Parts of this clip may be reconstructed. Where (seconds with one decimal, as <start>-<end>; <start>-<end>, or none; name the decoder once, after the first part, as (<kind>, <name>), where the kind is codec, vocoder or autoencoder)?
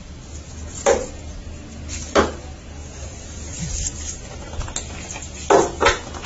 2.8-3.6 (vocoder, BigVGAN v2)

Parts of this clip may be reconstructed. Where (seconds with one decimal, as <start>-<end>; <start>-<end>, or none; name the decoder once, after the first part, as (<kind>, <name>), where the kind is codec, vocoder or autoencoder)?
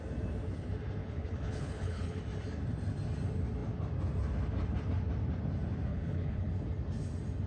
1.0-2.2 (codec, HILCodec); 5.9-6.5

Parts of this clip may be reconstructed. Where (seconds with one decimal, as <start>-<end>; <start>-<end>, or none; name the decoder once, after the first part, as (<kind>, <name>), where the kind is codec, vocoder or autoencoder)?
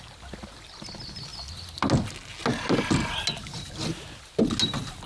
none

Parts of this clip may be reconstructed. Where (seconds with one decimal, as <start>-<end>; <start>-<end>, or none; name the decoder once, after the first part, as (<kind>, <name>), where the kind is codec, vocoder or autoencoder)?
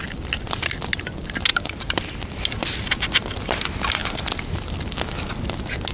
1.5-2.4 (vocoder, BigVGAN v2)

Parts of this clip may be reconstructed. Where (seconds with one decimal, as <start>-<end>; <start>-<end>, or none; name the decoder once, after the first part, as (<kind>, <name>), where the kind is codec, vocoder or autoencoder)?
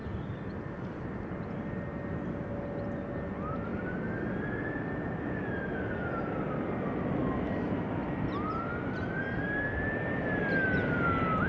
none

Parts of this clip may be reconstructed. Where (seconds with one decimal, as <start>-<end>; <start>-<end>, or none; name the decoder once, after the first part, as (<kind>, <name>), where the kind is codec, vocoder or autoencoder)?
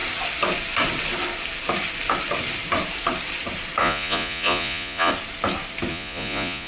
3.8-5.1 (vocoder, Vocos); 5.9-6.7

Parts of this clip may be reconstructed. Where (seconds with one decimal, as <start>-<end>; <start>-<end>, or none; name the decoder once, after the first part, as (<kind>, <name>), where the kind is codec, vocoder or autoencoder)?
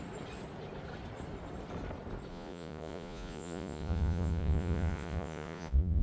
2.3-6.0 (vocoder, Vocos)